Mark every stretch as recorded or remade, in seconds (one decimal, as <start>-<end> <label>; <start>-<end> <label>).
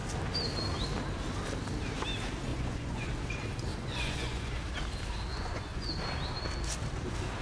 0.0-2.5 recorded; 2.5-3.1 remade; 3.1-3.7 recorded; 3.7-4.6 remade; 4.6-5.3 recorded; 5.3-5.9 remade; 5.9-7.4 recorded